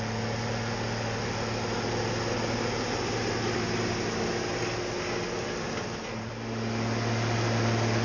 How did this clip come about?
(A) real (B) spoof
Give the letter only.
A